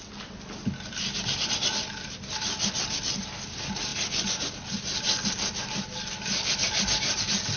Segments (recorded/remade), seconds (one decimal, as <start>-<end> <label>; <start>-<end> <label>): 0.0-7.6 recorded